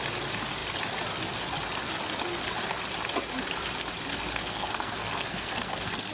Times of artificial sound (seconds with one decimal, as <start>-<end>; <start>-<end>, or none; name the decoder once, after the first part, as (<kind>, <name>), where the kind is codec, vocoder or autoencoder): 4.3-6.1 (codec, SNAC)